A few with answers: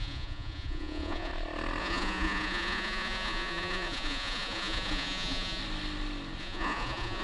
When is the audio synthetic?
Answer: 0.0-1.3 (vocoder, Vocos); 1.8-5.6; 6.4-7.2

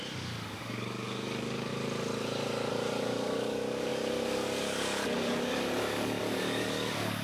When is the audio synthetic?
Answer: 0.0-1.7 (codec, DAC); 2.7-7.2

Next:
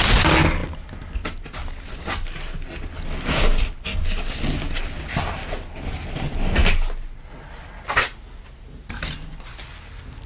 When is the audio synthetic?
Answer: none